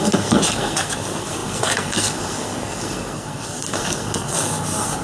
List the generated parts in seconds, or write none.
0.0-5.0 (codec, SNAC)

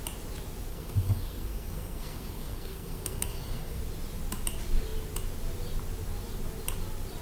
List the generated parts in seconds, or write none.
0.7-3.8 (codec, SNAC)

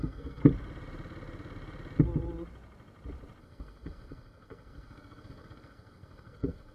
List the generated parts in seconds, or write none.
0.0-0.4 (codec, SNAC); 3.4-6.7